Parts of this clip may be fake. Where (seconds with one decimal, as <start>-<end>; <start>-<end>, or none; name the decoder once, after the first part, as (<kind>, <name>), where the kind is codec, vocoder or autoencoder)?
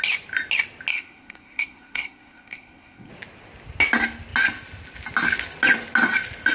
0.9-3.1 (codec, SNAC)